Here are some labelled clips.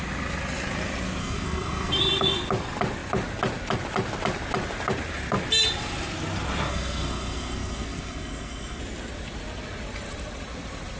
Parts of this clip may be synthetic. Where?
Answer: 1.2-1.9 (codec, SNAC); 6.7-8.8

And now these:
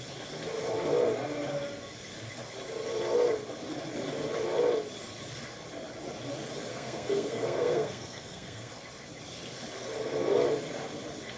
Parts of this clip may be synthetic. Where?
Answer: 6.7-8.7 (codec, SNAC)